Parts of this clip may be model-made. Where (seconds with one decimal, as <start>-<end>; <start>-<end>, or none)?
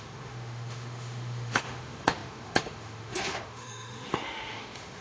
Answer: 0.0-5.0